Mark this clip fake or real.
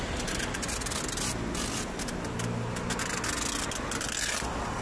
real